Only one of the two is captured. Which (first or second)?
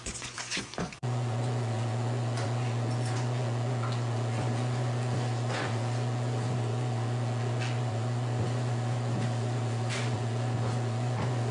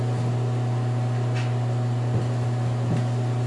second